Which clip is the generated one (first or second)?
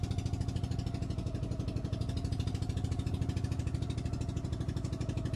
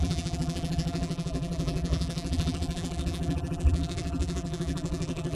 second